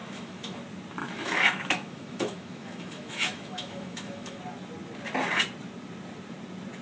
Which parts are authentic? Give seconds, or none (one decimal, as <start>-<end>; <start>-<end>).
0.6-1.0; 4.4-6.8